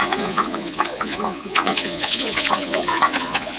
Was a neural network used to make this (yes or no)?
yes